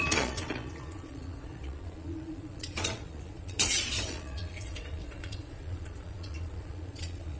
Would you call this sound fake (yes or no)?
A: yes